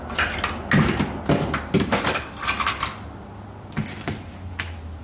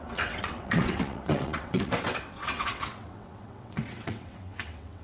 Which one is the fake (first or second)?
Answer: second